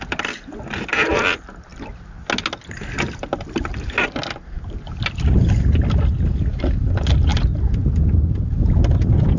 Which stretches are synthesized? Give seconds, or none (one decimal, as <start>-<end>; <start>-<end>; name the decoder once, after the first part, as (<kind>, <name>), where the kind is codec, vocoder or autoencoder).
none